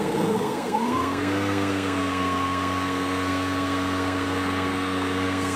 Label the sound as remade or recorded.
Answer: remade